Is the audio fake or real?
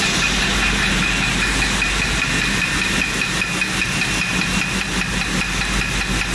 real